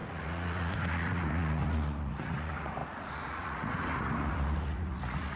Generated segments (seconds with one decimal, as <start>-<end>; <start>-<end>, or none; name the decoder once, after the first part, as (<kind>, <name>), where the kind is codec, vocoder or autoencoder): 0.0-5.4 (vocoder, Vocos)